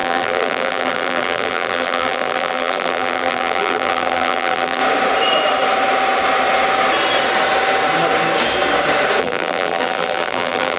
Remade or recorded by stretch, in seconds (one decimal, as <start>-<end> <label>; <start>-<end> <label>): 0.0-4.8 remade; 4.8-9.2 recorded; 9.2-10.8 remade